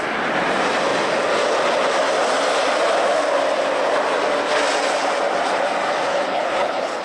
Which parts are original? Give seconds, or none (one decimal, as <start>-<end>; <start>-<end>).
0.0-6.1